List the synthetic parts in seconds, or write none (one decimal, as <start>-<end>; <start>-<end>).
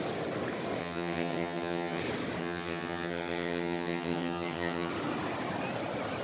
0.8-2.0; 2.4-4.9